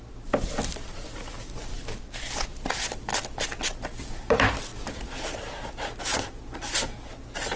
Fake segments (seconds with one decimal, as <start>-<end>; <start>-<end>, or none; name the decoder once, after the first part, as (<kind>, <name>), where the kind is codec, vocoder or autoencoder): none